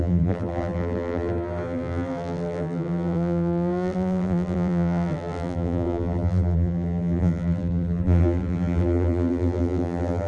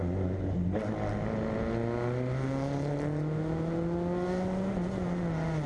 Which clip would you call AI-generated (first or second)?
first